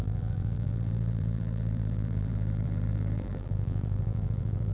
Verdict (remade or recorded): remade